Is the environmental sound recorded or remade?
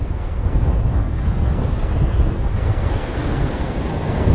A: remade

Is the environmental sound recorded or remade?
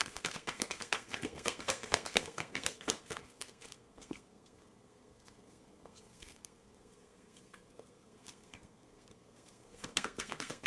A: remade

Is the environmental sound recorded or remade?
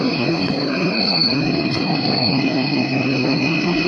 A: remade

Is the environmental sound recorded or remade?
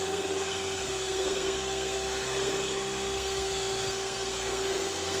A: remade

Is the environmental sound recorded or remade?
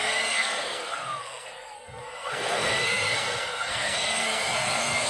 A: remade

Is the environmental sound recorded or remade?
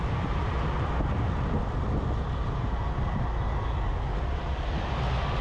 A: recorded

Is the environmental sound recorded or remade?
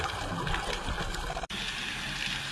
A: recorded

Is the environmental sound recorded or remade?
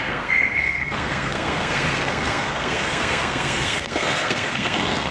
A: remade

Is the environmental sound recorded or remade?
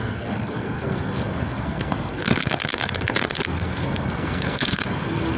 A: remade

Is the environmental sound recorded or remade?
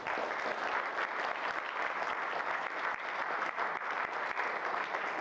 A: recorded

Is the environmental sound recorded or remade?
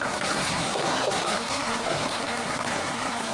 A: remade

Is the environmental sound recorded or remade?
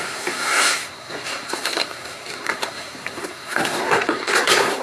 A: remade